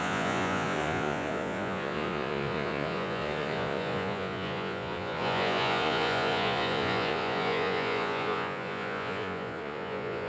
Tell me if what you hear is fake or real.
fake